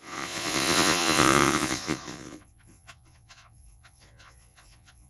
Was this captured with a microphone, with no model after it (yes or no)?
no